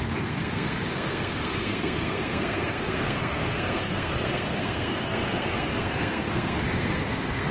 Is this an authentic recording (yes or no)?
no